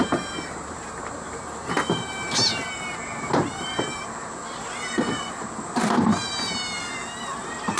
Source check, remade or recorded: remade